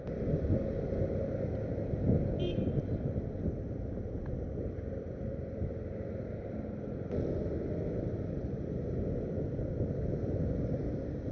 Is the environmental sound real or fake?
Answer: real